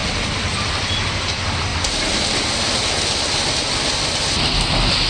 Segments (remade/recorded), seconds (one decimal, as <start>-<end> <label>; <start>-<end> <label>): 0.0-0.7 remade; 0.7-1.7 recorded; 1.7-4.0 remade; 4.0-5.1 recorded